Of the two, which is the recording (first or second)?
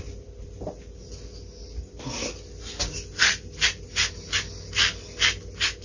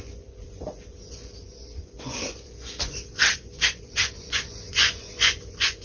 first